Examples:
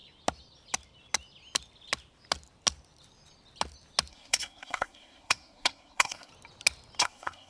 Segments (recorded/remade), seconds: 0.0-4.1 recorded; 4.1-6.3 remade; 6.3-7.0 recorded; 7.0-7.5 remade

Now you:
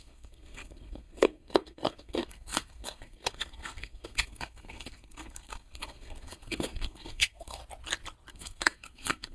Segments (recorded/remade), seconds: 0.0-7.6 remade; 7.6-8.3 recorded; 8.3-9.3 remade

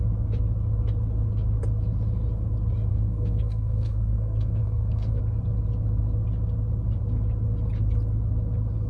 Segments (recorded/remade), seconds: 0.0-2.9 recorded; 2.9-5.2 remade; 5.2-8.9 recorded

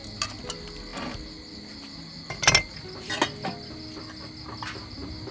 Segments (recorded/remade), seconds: 0.0-5.3 recorded